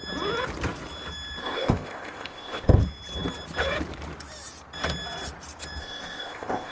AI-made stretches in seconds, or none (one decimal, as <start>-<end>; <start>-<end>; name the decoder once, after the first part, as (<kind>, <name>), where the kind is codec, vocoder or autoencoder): 1.4-2.8 (codec, ZipCodec); 5.8-6.7